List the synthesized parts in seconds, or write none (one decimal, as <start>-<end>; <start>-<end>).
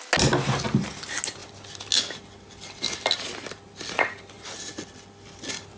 none